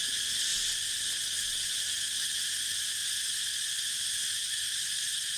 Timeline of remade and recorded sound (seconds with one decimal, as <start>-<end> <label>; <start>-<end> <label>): 0.0-0.5 recorded; 0.5-1.1 remade; 1.1-5.4 recorded